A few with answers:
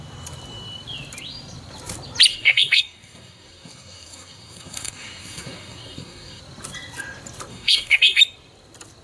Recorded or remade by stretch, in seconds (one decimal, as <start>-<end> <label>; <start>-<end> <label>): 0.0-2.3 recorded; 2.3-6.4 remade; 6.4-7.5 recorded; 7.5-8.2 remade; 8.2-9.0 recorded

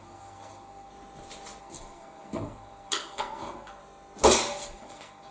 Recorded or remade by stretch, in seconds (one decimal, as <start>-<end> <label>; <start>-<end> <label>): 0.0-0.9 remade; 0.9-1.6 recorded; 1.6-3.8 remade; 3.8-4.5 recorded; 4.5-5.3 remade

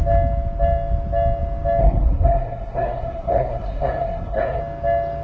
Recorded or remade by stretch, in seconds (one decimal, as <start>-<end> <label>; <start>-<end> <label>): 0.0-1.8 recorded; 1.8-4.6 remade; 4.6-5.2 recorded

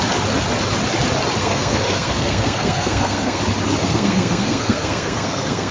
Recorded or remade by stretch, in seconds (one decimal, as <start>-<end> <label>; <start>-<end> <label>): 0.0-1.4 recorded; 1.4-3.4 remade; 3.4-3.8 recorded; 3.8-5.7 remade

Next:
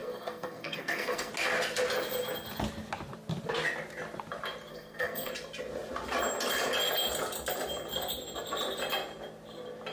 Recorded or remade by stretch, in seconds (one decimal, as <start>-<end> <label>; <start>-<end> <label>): 0.0-1.3 remade; 1.3-4.7 recorded; 4.7-5.3 remade; 5.3-9.9 recorded